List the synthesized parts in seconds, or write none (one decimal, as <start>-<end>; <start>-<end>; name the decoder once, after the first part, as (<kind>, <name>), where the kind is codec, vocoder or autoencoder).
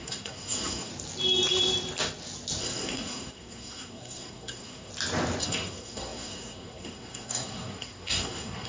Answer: 0.0-0.9 (codec, SNAC); 2.6-4.9; 5.4-8.7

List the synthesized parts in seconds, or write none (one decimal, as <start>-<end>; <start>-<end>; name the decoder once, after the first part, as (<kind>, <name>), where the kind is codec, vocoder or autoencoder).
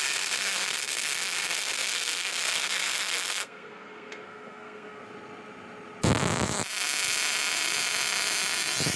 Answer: 0.0-5.0 (codec, SNAC)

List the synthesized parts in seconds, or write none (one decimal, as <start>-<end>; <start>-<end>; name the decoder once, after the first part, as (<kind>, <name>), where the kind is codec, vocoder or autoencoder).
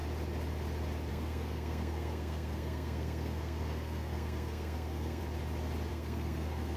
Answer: 1.1-5.2 (codec, SNAC); 5.9-6.8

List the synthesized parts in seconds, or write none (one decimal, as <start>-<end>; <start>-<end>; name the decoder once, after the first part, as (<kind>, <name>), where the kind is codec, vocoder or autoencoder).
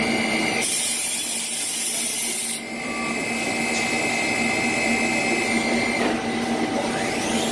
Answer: none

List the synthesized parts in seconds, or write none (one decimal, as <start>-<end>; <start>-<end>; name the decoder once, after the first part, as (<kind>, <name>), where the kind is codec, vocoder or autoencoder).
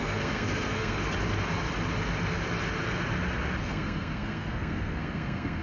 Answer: 0.0-1.0 (codec, SNAC); 3.6-5.6